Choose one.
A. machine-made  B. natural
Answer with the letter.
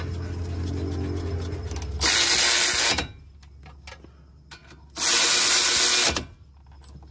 B